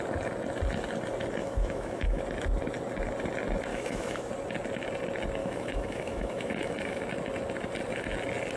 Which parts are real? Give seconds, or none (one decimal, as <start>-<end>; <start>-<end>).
0.0-1.4; 2.2-3.7; 4.3-5.4; 7.0-8.6